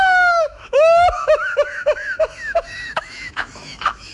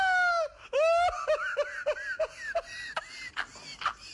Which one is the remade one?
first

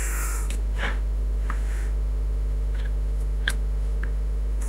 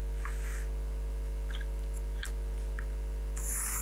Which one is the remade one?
first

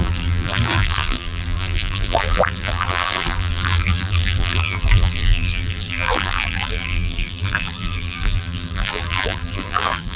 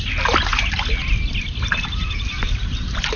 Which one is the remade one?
first